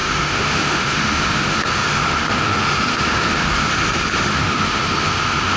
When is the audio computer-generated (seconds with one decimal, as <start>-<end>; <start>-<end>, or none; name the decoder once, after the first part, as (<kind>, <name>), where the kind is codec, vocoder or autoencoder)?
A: 0.0-3.7 (autoencoder, DAC-VAE); 4.3-5.6